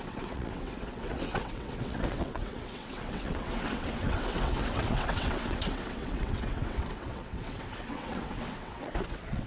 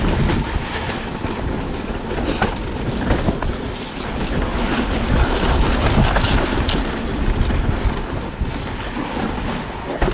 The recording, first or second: second